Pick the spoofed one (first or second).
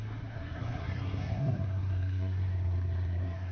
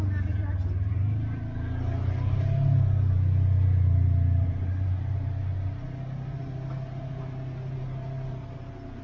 first